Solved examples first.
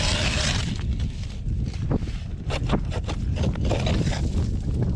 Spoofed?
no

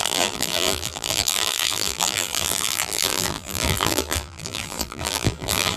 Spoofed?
yes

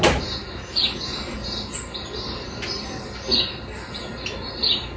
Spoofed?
no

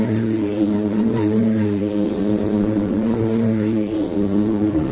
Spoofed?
yes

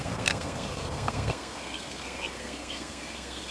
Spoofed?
yes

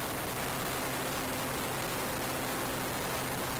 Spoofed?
no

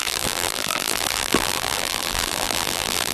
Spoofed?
yes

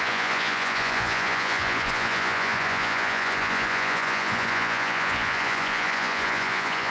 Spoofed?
yes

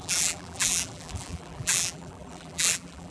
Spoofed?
yes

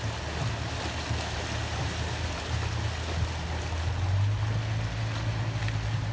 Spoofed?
no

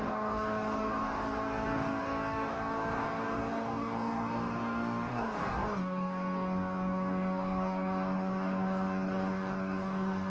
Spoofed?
yes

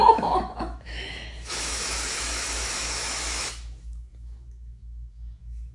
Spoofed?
yes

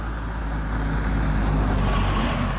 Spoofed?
no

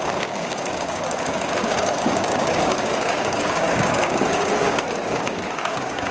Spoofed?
yes